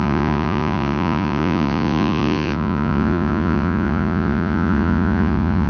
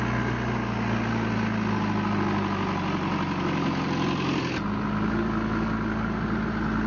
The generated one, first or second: first